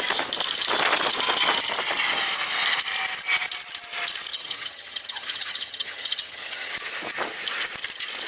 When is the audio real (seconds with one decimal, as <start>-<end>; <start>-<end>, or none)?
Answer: 0.0-4.3; 6.7-8.3